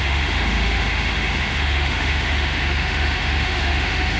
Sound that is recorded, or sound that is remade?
remade